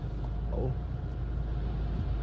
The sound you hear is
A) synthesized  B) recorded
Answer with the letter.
B